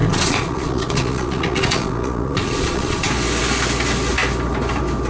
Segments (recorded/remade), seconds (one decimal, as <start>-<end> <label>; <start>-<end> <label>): 0.0-3.1 remade; 3.1-5.1 recorded